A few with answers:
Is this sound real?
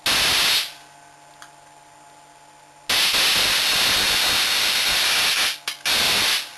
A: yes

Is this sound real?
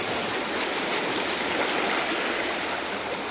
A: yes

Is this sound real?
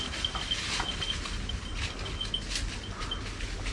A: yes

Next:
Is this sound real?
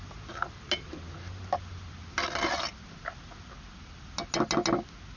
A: yes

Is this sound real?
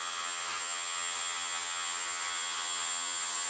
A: no